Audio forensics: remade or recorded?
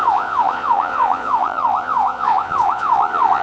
remade